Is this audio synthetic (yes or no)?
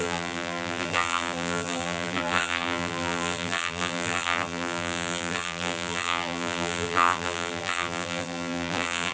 yes